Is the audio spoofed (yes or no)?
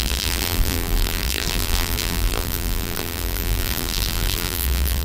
yes